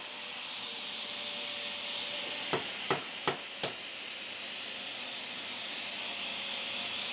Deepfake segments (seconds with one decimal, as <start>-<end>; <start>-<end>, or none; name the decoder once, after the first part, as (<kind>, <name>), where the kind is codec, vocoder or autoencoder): none